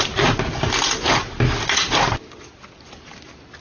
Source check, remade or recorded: recorded